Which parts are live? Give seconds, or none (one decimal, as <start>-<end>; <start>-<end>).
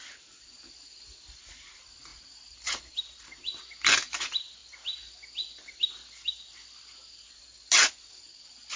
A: 0.0-8.8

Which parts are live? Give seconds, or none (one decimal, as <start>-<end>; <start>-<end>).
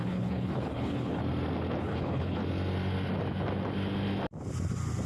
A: 1.2-1.8; 2.4-5.1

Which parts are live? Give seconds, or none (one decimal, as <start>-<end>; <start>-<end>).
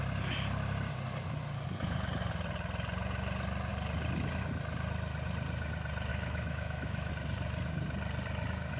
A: 0.0-6.1; 7.1-8.8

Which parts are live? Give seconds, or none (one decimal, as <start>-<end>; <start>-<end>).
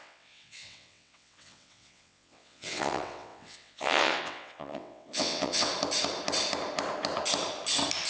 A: 5.7-8.1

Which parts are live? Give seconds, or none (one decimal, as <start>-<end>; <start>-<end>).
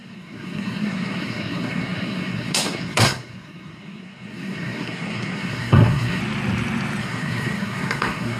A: 6.2-7.0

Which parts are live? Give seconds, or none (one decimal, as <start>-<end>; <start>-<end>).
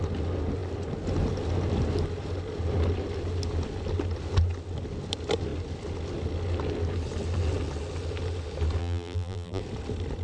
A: 0.0-8.8; 9.6-10.2